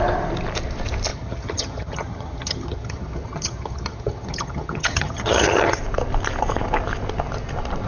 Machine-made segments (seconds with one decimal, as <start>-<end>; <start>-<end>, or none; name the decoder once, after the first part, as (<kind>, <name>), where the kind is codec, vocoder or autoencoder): 1.1-5.8 (vocoder, HiFi-GAN)